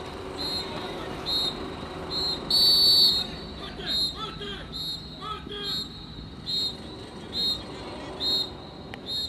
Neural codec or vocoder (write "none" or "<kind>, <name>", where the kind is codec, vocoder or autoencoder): none